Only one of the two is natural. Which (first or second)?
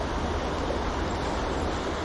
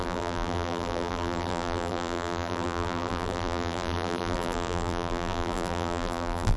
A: first